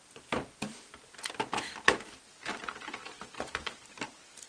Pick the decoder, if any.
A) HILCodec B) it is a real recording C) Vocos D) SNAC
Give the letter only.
B